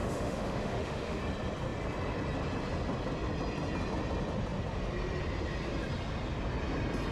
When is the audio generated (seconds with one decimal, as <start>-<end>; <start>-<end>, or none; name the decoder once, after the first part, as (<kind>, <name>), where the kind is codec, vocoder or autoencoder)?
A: 0.0-1.2 (autoencoder, DAC-VAE)